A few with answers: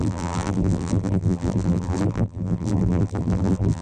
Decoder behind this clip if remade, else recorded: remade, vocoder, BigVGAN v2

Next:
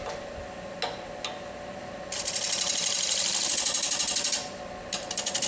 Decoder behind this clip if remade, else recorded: recorded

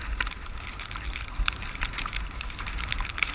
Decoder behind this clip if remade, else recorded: remade, vocoder, BigVGAN v2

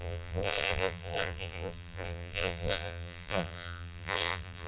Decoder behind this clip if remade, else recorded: remade, vocoder, BigVGAN v2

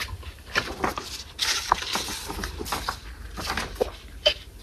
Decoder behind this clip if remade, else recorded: remade, vocoder, BigVGAN v2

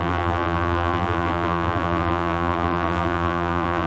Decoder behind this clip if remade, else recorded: remade, vocoder, BigVGAN v2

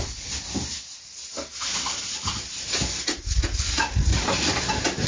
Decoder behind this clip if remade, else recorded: recorded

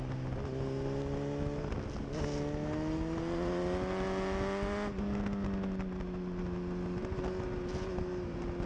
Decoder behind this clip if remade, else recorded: recorded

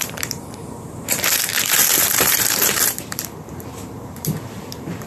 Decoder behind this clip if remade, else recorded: remade, vocoder, BigVGAN v2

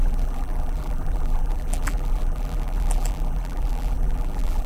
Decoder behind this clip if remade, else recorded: remade, vocoder, BigVGAN v2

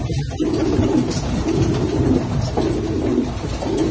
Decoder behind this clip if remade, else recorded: remade, vocoder, BigVGAN v2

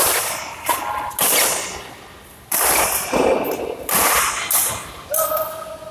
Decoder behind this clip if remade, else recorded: recorded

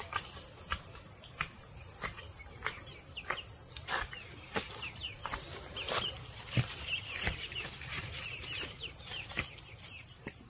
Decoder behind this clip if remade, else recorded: remade, vocoder, BigVGAN v2